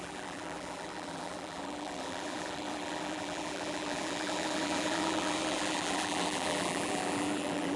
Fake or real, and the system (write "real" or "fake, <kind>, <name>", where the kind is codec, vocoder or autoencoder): fake, vocoder, BigVGAN v2